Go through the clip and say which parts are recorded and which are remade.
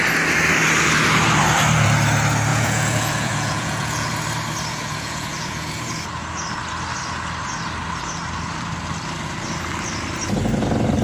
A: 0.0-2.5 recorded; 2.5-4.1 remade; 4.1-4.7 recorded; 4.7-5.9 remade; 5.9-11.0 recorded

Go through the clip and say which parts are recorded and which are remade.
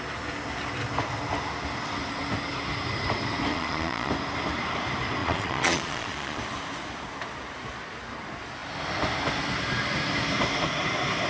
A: 0.0-3.5 recorded; 3.5-4.1 remade; 4.1-5.2 recorded; 5.2-6.4 remade; 6.4-11.3 recorded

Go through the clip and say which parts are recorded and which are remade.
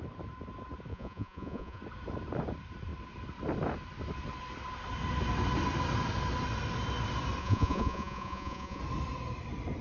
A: 0.0-0.9 recorded; 0.9-1.8 remade; 1.8-7.4 recorded; 7.4-8.8 remade; 8.8-9.8 recorded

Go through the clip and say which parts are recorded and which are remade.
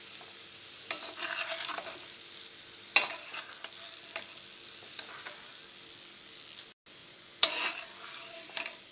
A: 0.0-7.0 recorded; 7.0-7.7 remade; 7.7-8.9 recorded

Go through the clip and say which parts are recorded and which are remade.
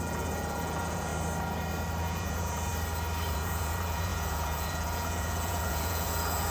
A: 0.0-1.1 remade; 1.1-2.0 recorded; 2.0-2.7 remade; 2.7-3.3 recorded; 3.3-6.5 remade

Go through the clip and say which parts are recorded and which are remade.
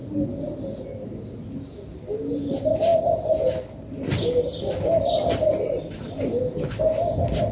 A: 0.0-7.5 recorded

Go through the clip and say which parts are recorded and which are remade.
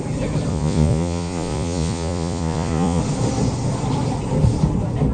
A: 0.0-0.5 recorded; 0.5-3.0 remade; 3.0-5.1 recorded